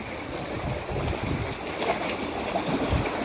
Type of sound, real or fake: real